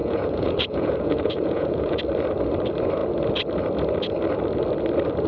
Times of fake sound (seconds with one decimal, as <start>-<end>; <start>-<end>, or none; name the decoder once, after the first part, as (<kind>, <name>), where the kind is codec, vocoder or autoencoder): 0.0-2.0 (vocoder, Vocos)